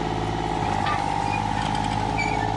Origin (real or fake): real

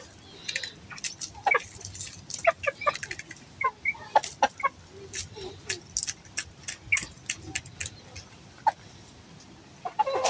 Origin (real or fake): real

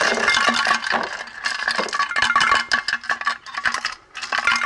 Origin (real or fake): real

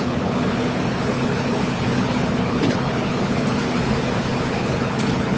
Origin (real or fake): fake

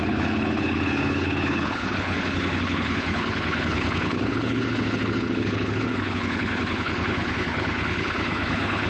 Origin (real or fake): fake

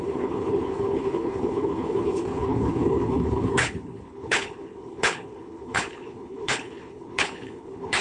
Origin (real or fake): fake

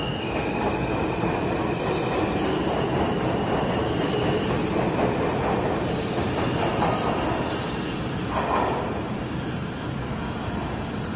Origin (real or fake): real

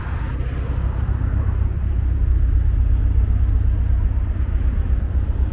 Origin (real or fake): real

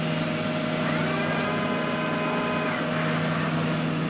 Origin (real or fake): real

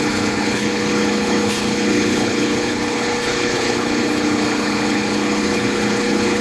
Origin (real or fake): fake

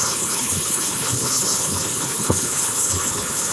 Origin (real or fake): fake